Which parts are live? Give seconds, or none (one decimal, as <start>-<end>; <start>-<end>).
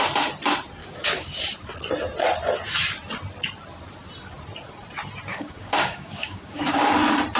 0.0-0.8; 1.4-5.3; 6.8-7.4